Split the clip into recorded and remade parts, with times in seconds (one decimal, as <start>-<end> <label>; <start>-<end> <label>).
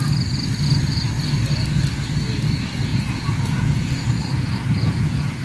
0.0-2.9 recorded; 2.9-3.9 remade; 3.9-4.3 recorded; 4.3-5.4 remade